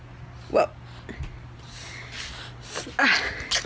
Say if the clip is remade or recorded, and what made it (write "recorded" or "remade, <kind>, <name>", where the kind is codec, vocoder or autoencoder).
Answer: recorded